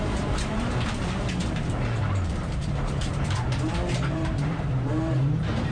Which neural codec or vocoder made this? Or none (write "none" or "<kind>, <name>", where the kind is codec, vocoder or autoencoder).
vocoder, BigVGAN v2